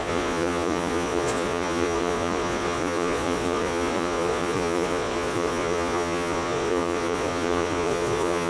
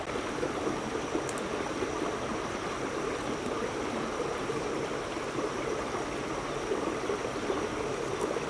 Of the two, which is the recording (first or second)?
second